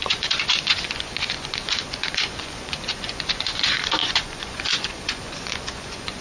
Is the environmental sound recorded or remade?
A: remade